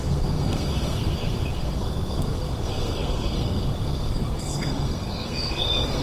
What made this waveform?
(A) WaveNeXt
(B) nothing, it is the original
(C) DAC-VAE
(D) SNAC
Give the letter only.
D